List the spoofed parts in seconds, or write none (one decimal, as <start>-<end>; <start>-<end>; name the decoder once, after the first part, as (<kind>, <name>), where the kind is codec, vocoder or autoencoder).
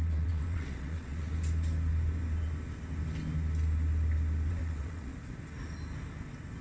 0.0-1.3 (vocoder, WaveNeXt); 4.5-5.1